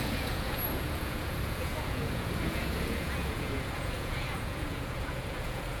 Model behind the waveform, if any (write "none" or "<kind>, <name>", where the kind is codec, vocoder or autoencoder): vocoder, Vocos